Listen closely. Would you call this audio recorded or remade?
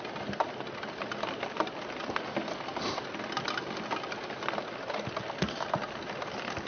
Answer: recorded